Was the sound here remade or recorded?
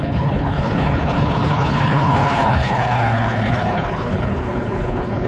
remade